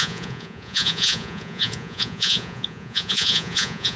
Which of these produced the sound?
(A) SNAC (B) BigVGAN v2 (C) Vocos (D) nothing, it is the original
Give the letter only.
C